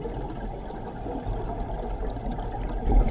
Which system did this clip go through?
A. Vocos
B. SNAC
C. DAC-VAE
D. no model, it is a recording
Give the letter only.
D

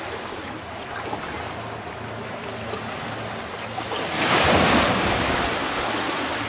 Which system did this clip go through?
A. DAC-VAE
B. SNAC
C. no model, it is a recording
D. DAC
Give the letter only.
C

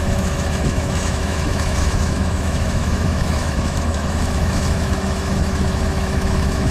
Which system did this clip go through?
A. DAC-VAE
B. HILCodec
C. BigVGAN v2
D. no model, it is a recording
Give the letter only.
A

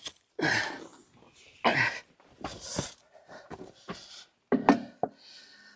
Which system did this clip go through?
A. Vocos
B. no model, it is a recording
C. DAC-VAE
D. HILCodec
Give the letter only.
B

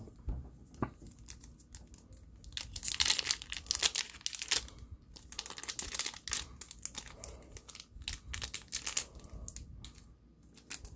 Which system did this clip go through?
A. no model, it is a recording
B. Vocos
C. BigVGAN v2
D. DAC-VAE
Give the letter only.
A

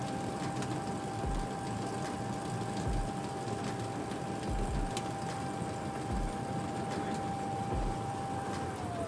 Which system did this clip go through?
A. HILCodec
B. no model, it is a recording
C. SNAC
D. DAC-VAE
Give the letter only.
B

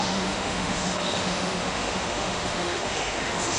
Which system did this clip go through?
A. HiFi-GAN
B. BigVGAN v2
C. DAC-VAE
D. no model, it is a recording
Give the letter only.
C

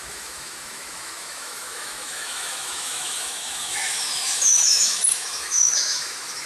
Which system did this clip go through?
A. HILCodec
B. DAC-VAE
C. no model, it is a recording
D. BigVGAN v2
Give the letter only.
B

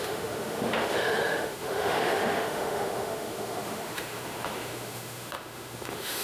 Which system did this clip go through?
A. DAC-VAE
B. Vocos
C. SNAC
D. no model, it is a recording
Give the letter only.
A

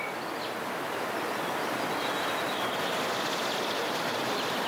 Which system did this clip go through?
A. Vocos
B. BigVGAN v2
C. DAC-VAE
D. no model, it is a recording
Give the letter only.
D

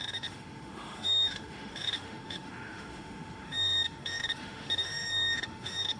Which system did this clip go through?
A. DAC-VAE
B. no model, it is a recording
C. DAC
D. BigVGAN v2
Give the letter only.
A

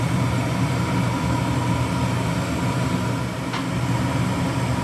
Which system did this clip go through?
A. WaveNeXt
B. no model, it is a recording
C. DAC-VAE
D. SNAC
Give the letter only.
B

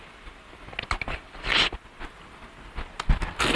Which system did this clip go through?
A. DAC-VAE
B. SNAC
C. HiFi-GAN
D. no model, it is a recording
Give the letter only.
D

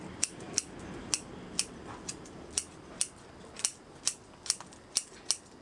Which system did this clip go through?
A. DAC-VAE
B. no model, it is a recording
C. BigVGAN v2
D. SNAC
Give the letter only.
B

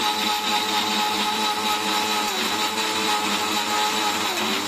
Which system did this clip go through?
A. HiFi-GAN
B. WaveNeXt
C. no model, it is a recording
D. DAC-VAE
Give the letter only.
C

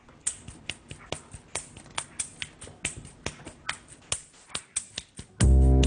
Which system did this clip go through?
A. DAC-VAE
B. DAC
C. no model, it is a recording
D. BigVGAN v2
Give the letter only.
C